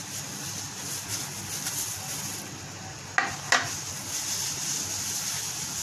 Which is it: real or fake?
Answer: real